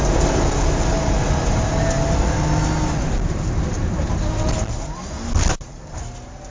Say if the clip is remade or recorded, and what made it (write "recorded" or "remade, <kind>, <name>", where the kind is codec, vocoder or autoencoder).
recorded